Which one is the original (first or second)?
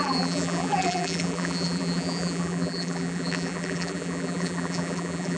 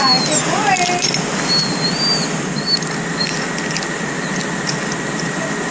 second